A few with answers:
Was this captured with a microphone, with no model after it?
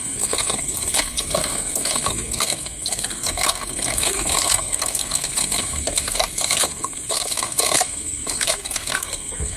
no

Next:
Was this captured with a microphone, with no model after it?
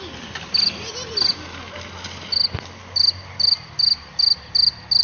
yes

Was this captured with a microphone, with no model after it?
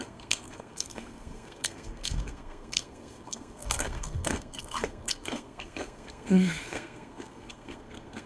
no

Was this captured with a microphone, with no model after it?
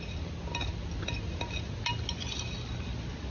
yes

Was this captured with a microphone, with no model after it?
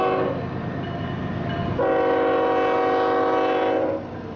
yes